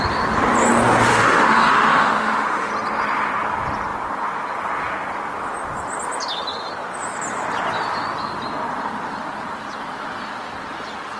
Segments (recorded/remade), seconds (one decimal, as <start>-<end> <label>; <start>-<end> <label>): 0.0-1.1 recorded; 1.1-2.7 remade; 2.7-11.2 recorded